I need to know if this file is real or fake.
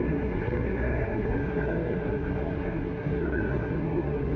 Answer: fake